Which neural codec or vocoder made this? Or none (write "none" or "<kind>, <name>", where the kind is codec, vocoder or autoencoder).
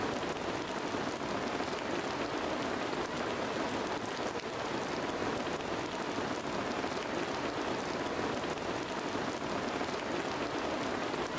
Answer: none